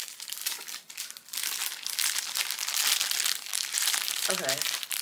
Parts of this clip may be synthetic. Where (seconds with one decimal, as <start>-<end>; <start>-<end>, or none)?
0.4-1.0; 1.6-2.4; 3.5-5.0